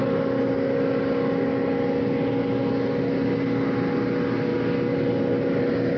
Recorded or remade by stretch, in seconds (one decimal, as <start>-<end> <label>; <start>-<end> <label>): 0.0-6.0 recorded